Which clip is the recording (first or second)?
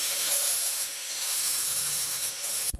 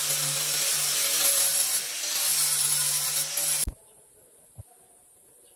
second